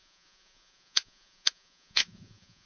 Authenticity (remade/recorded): remade